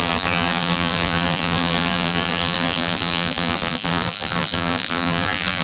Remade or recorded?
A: remade